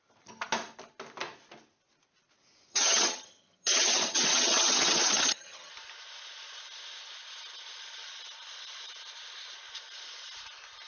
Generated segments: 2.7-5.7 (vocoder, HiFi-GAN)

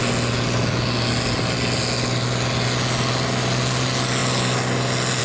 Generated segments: none

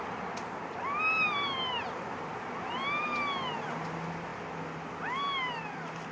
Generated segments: none

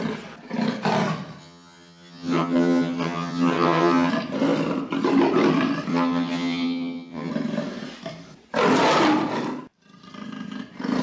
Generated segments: 1.4-4.1 (vocoder, HiFi-GAN); 5.9-7.3

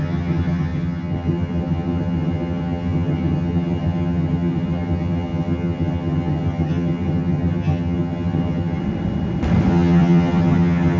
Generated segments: 0.0-8.8 (vocoder, HiFi-GAN); 9.7-11.0

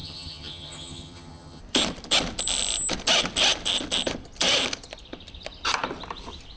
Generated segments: 0.0-1.6 (vocoder, HiFi-GAN)